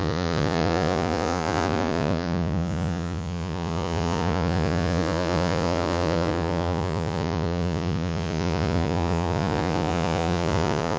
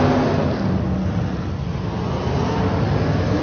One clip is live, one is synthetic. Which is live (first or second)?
second